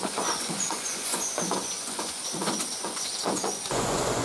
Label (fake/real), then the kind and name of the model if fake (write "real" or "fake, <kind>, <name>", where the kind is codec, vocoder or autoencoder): fake, vocoder, Vocos